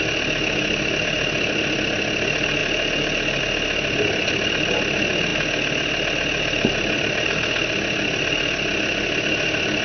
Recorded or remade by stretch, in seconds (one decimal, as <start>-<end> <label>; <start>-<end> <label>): 0.0-9.8 recorded